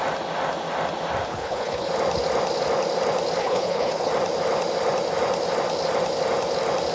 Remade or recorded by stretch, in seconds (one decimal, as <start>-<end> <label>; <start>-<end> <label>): 0.0-1.3 recorded; 1.3-1.9 remade; 1.9-3.4 recorded; 3.4-4.1 remade; 4.1-6.9 recorded